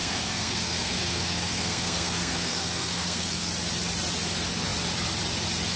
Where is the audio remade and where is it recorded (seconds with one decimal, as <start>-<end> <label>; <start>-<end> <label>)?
0.0-3.5 remade; 3.5-5.8 recorded